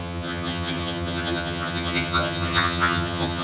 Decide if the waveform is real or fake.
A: fake